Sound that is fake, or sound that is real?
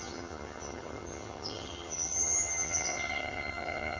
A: fake